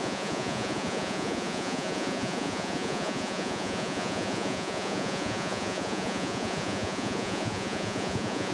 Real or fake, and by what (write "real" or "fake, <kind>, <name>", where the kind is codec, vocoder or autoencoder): fake, vocoder, Vocos